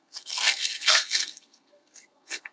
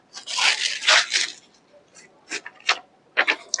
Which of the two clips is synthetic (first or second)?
first